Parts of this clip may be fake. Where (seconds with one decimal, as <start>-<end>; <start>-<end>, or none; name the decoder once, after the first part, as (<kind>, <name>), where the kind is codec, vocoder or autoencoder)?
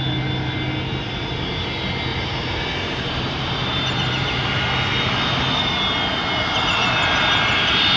2.1-4.7 (vocoder, BigVGAN v2)